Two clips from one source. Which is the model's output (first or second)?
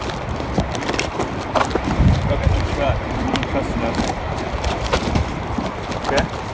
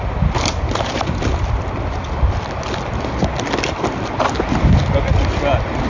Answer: first